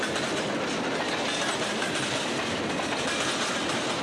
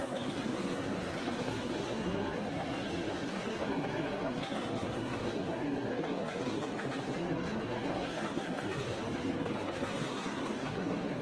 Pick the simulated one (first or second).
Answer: second